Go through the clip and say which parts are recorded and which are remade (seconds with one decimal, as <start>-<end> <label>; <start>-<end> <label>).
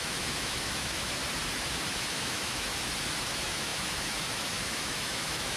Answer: 0.0-1.2 remade; 1.2-1.9 recorded; 1.9-2.7 remade; 2.7-3.2 recorded; 3.2-5.6 remade